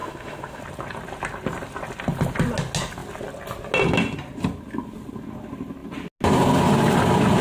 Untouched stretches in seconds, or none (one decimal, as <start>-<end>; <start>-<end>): 0.6-7.4